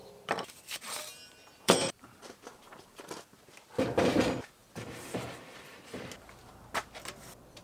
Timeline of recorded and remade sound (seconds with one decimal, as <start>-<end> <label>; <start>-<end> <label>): 0.0-3.2 remade; 3.2-4.6 recorded; 4.6-6.0 remade; 6.0-7.6 recorded